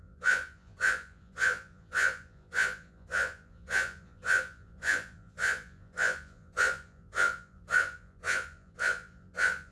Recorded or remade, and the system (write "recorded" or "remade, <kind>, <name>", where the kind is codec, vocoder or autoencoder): remade, vocoder, Vocos